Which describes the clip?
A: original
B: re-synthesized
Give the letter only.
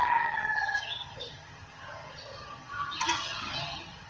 B